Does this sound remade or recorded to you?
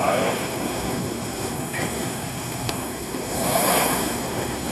remade